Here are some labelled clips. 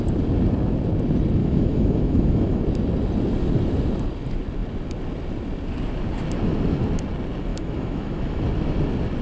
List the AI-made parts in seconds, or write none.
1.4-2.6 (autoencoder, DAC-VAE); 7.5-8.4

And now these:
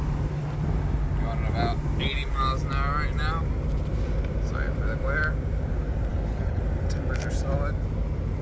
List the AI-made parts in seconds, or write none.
6.1-6.6 (codec, HILCodec)

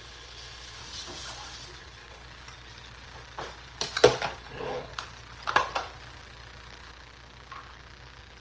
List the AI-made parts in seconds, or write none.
0.0-0.8 (codec, HILCodec); 1.8-2.2; 4.4-4.9

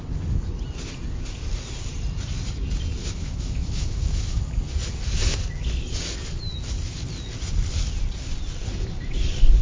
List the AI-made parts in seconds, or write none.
3.0-4.4 (autoencoder, DAC-VAE)

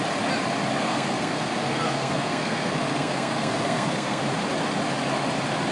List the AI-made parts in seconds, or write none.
0.8-4.2 (codec, SNAC)

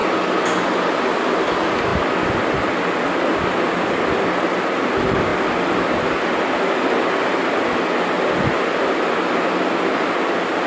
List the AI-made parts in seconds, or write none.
none

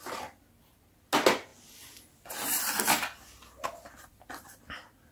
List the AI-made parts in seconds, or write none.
none

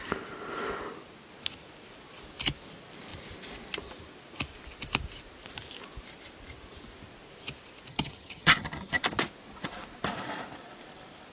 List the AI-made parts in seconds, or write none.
7.9-9.0 (vocoder, HiFi-GAN)